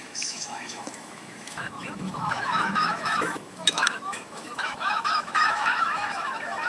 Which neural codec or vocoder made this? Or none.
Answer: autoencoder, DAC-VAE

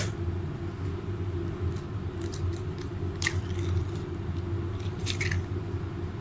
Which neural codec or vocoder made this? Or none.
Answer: none